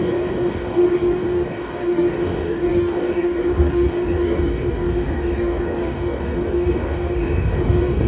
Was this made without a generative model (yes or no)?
no